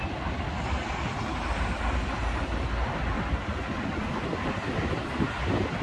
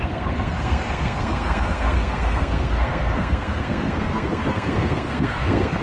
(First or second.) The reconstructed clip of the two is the second